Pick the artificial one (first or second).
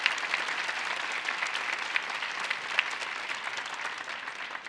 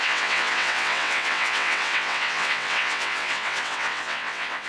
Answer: second